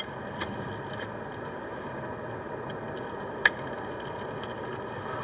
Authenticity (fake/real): real